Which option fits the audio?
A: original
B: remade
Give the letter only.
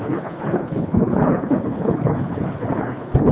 B